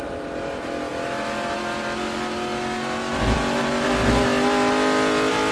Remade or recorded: recorded